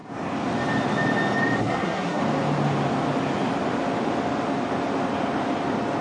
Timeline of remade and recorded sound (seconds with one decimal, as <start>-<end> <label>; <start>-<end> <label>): 0.0-1.6 recorded; 1.6-2.2 remade; 2.2-6.0 recorded